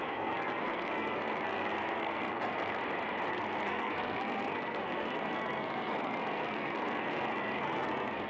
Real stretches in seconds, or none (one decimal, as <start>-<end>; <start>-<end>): 2.8-3.3